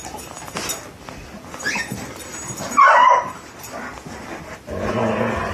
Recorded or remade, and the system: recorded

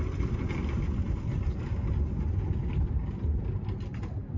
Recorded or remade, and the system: recorded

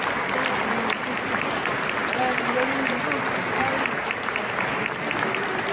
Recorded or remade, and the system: recorded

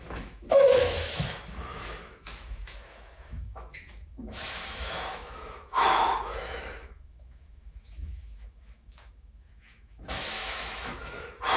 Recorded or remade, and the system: remade, autoencoder, DAC-VAE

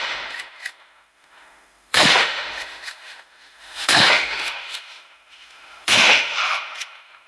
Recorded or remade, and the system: remade, autoencoder, DAC-VAE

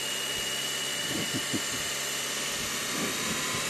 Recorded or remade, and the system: recorded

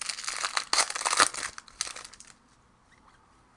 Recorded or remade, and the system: recorded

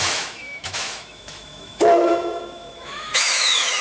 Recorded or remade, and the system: remade, autoencoder, DAC-VAE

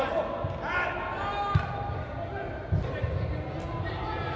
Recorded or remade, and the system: recorded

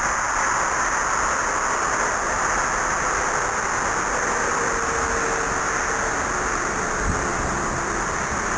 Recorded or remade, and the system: recorded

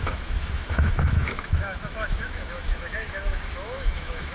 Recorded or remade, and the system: remade, autoencoder, DAC-VAE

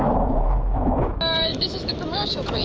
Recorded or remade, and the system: remade, autoencoder, DAC-VAE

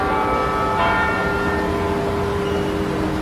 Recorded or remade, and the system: recorded